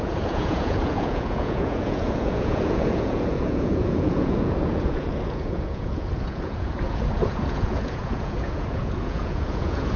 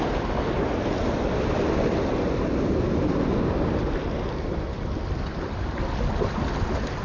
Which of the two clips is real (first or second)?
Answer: second